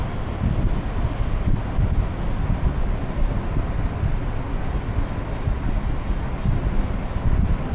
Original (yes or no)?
yes